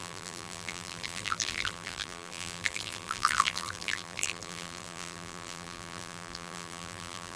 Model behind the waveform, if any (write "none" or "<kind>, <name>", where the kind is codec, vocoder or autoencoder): vocoder, BigVGAN v2